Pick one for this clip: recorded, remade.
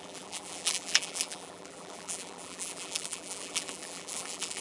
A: remade